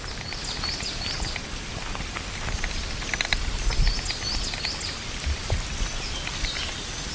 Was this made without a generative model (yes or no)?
yes